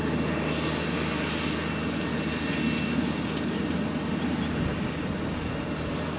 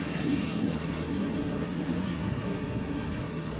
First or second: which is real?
first